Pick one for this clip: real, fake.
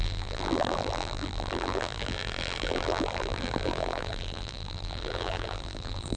fake